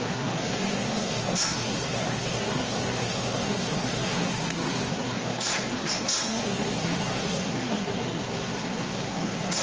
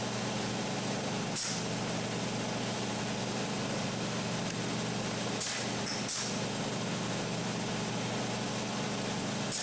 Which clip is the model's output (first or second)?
first